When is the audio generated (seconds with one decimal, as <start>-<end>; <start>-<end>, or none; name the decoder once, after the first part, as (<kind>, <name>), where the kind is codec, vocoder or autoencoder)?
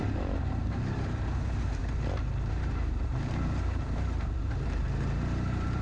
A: 0.0-1.8 (vocoder, BigVGAN v2); 2.4-5.8